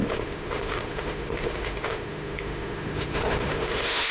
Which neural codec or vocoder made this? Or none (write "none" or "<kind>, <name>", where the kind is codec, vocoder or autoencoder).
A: autoencoder, DAC-VAE